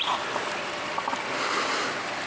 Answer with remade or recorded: recorded